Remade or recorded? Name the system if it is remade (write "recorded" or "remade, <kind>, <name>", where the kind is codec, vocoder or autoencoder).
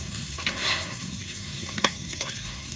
remade, codec, SNAC